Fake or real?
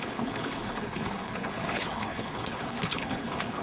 fake